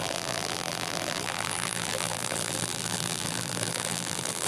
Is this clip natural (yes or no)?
no